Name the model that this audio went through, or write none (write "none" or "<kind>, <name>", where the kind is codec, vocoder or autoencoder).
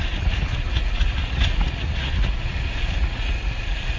vocoder, Vocos